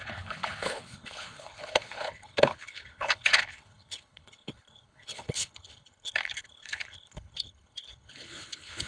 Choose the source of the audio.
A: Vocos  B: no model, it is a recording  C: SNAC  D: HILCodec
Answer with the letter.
D